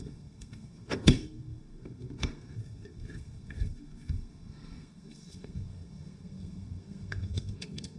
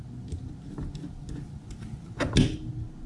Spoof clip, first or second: first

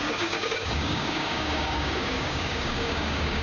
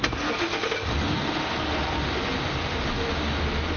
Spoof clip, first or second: first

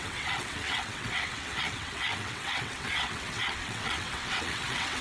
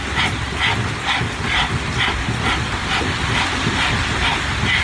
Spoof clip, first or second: first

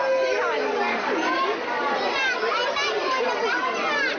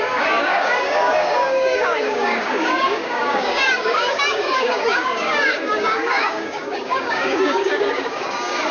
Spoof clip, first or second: second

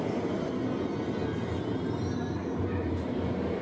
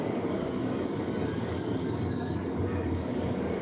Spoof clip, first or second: second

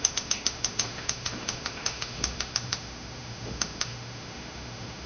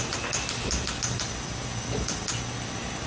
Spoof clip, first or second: first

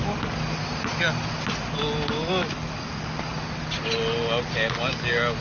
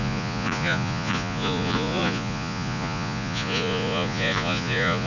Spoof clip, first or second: second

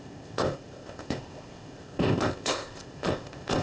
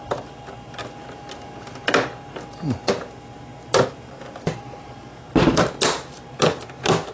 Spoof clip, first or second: first